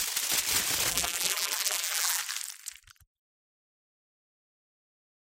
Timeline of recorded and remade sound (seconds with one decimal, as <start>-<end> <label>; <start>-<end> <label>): 0.0-0.9 recorded; 0.9-2.2 remade; 2.2-5.4 recorded